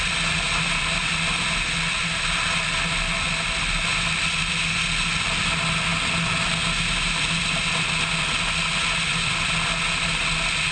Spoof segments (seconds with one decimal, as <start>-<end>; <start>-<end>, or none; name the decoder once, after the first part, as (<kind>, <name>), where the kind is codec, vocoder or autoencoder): none